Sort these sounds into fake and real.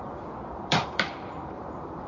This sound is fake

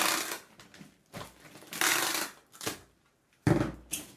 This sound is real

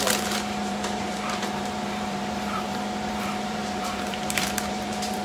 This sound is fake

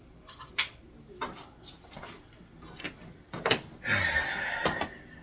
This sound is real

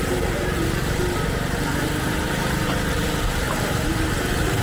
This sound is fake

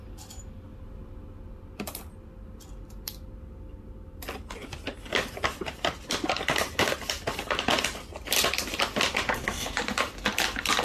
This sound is real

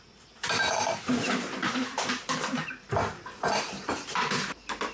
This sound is fake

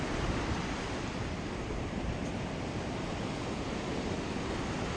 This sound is fake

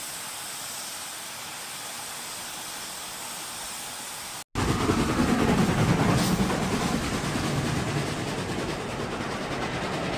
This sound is real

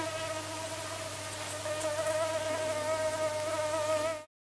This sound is real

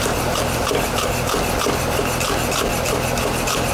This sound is real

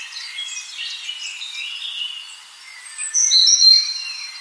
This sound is real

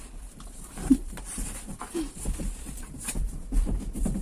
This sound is fake